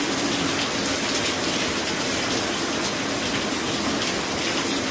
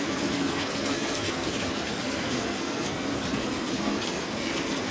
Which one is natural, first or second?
first